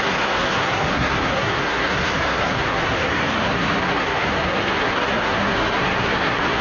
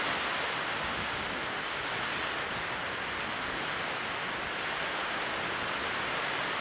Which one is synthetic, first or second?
first